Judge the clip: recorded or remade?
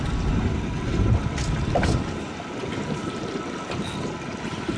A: recorded